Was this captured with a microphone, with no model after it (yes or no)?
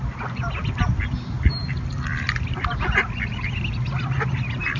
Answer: yes